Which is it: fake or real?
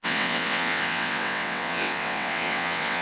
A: fake